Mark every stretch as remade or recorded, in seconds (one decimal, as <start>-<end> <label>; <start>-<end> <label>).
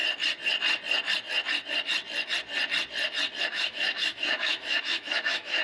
0.0-3.4 recorded; 3.4-5.6 remade